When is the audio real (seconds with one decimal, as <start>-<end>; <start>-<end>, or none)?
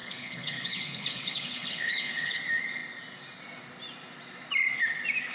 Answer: 2.4-5.3